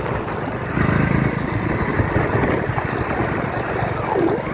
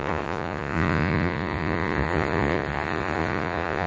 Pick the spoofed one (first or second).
second